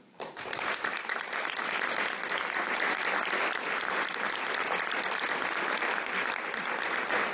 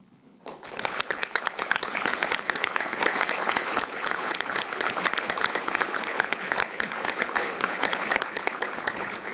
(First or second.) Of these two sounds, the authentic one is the first